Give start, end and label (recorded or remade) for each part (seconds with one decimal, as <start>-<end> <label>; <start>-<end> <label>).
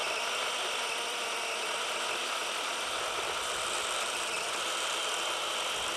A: 0.0-6.0 recorded